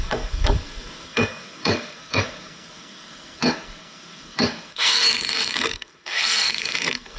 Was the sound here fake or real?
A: fake